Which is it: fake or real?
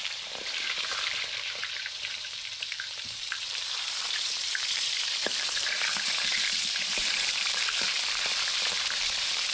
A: fake